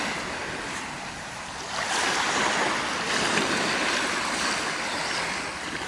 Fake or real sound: real